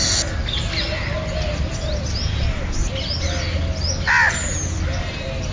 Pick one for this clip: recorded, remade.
recorded